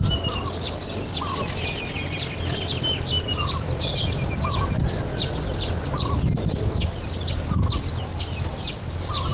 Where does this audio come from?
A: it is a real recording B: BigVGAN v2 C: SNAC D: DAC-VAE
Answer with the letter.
A